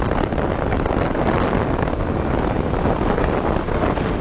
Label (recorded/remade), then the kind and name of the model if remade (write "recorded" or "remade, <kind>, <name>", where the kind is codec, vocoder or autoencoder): recorded